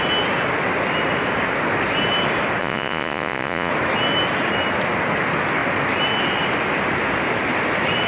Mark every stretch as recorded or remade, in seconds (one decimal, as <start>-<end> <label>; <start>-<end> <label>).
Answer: 0.0-2.6 recorded; 2.6-3.7 remade; 3.7-8.1 recorded